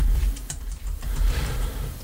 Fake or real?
fake